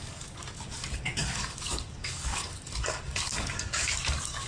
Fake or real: fake